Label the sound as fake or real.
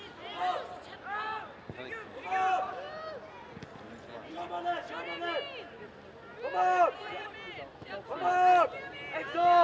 real